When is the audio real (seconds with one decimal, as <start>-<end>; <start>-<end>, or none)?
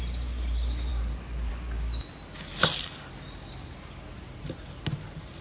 0.0-5.4